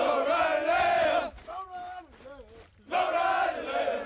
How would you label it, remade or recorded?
recorded